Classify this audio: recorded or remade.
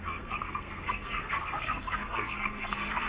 remade